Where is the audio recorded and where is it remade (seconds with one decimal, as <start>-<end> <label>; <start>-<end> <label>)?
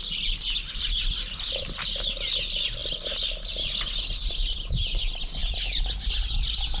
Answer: 0.0-6.8 recorded